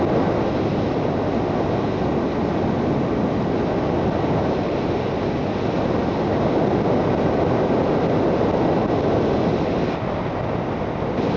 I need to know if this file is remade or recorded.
recorded